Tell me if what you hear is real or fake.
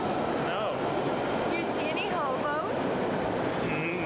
real